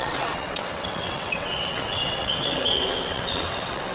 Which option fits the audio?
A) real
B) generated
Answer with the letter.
B